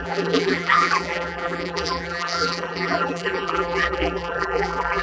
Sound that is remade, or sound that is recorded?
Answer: remade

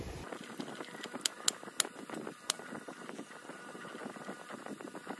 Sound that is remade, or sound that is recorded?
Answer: recorded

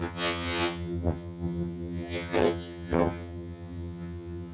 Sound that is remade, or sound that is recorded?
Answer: remade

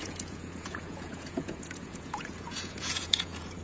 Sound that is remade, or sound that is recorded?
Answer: remade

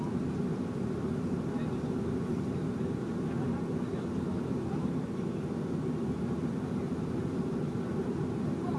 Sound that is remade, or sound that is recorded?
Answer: recorded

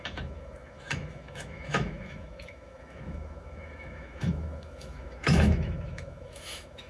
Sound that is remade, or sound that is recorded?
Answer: remade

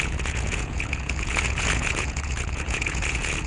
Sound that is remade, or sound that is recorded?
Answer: remade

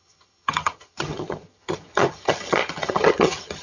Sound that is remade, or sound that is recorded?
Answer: remade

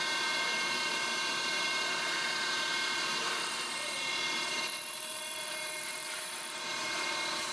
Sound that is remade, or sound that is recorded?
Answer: remade